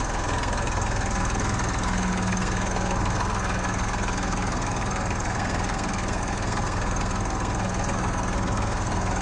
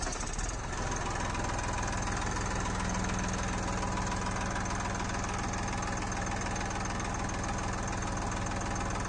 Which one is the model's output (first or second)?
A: first